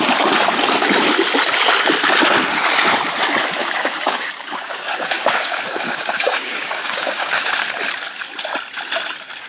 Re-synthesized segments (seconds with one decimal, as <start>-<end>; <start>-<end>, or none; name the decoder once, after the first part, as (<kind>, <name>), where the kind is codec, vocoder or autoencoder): 3.6-7.5 (codec, DAC)

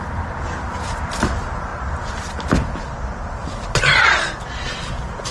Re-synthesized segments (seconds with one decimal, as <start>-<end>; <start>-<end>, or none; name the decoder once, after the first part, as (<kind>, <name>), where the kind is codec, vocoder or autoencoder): none

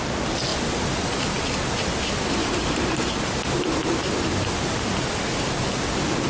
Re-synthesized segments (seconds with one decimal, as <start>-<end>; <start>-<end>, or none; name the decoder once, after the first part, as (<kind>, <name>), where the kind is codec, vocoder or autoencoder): 2.4-4.8 (vocoder, BigVGAN v2)

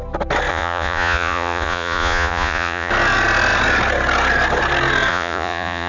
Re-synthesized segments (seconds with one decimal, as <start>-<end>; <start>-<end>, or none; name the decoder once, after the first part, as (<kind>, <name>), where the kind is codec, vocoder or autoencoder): 0.5-2.9 (vocoder, Vocos); 5.1-5.9

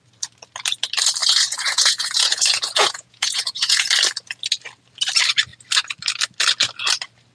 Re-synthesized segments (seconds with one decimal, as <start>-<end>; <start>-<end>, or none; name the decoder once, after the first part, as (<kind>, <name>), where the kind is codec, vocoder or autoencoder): 1.2-3.9 (vocoder, Vocos)

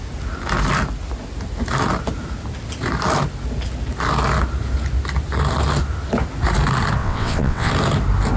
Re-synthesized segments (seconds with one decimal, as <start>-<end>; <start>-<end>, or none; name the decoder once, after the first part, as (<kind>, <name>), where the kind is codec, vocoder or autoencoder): 7.0-7.7 (vocoder, WaveNeXt)

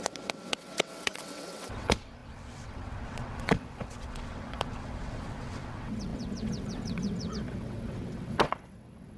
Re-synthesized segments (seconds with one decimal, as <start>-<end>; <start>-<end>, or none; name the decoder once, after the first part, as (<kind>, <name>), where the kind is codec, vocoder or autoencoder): 0.0-9.2 (vocoder, WaveNeXt)